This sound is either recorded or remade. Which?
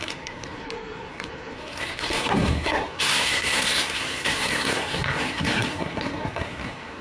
remade